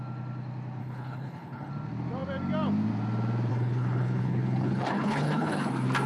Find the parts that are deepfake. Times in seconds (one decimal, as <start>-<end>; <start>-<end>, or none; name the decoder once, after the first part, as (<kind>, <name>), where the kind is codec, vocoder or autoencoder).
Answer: 0.8-1.7 (codec, HILCodec); 3.5-5.6